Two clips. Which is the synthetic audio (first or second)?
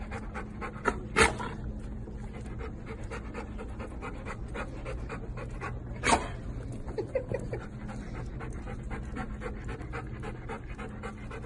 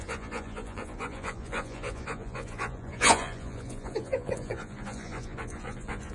second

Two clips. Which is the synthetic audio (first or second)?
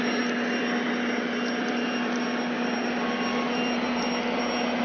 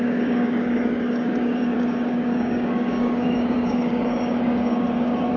second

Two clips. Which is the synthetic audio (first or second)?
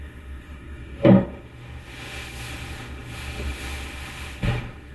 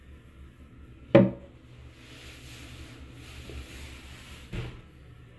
first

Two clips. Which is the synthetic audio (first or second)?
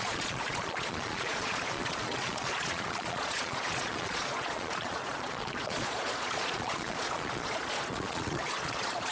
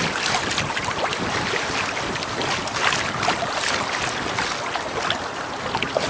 first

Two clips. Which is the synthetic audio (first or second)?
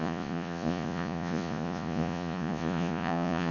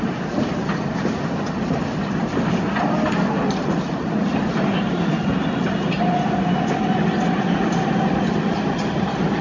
first